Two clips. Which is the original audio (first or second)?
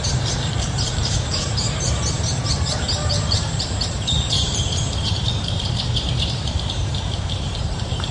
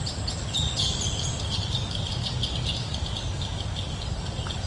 second